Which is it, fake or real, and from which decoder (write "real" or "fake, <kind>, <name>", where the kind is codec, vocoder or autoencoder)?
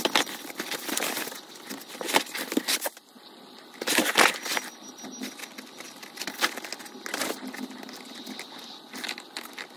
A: real